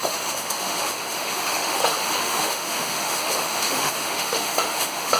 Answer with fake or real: fake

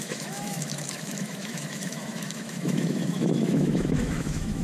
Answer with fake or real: fake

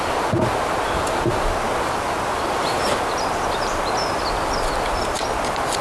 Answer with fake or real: real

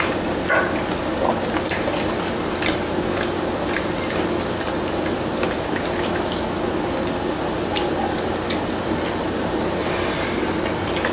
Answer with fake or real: real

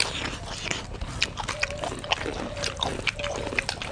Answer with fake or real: real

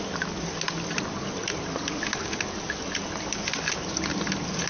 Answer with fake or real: real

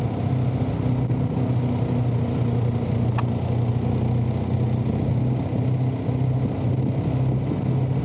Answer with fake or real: real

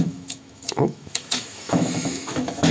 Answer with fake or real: fake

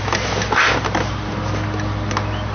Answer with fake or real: real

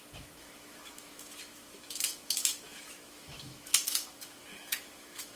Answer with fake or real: fake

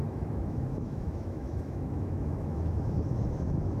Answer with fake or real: fake